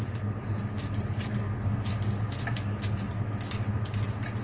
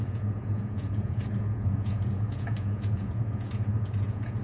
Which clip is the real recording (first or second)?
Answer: first